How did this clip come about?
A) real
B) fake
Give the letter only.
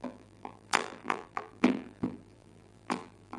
B